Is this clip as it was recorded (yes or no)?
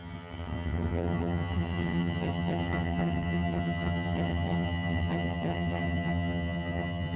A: no